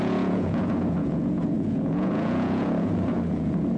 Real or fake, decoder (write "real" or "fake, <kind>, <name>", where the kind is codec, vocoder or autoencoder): fake, vocoder, Vocos